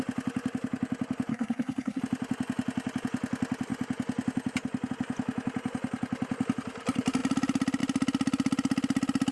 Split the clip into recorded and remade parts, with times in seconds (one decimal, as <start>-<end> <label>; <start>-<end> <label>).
0.0-1.3 recorded; 1.3-2.0 remade; 2.0-9.3 recorded